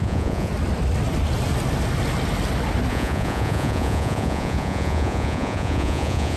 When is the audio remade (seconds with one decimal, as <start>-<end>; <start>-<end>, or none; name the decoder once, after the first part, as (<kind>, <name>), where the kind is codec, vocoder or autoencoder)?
0.0-0.5 (vocoder, Vocos); 2.9-6.4